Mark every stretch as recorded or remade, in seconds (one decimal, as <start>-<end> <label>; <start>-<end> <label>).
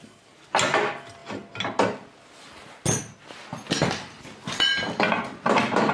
0.0-5.9 recorded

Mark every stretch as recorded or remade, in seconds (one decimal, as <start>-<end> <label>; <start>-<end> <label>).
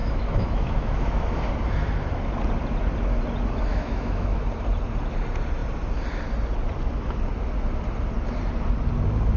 0.0-1.5 remade; 1.5-3.7 recorded; 3.7-4.4 remade; 4.4-9.4 recorded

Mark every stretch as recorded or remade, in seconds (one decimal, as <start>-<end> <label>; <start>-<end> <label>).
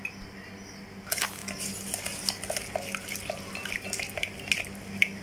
0.0-5.2 recorded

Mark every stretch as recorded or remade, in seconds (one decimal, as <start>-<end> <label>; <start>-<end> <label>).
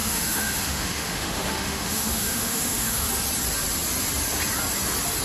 0.0-3.1 remade; 3.1-5.2 recorded